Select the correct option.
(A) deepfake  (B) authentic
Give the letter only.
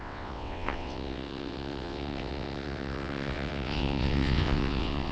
A